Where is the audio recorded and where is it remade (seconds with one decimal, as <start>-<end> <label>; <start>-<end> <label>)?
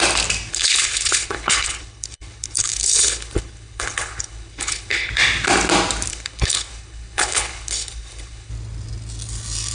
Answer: 0.0-0.5 recorded; 0.5-5.1 remade; 5.1-6.1 recorded; 6.1-8.5 remade; 8.5-9.7 recorded